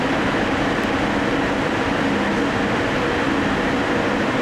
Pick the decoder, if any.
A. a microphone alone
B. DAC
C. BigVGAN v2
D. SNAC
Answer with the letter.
A